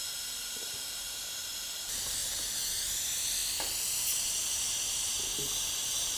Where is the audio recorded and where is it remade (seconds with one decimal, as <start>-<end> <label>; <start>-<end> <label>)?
0.0-2.2 remade; 2.2-2.8 recorded; 2.8-3.4 remade; 3.4-6.2 recorded